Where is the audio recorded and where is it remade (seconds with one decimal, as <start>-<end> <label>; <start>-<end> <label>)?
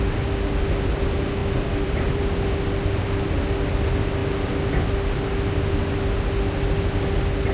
0.0-1.4 recorded; 1.4-2.3 remade; 2.3-7.5 recorded